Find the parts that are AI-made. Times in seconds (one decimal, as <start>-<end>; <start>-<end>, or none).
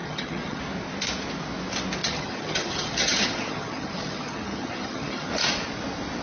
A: 0.0-0.6; 2.0-5.3